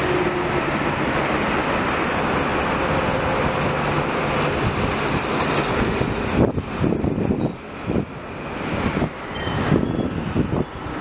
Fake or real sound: real